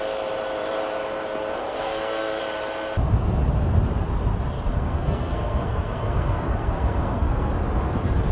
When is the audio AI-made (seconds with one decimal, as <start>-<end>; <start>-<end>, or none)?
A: 1.6-2.4; 4.7-7.5